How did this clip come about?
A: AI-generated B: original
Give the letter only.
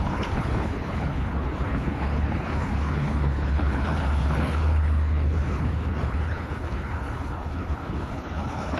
A